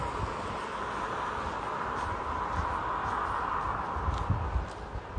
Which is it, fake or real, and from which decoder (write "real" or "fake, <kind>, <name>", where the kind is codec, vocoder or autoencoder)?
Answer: real